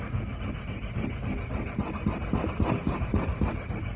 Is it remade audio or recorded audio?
recorded